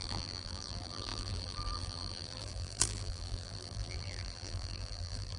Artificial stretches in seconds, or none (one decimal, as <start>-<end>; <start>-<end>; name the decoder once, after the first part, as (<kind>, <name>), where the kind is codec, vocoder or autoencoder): 0.0-5.4 (vocoder, BigVGAN v2)